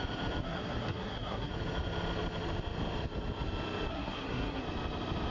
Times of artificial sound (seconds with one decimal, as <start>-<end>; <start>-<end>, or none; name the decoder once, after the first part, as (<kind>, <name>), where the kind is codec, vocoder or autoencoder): 0.4-1.5 (codec, SNAC); 3.9-4.6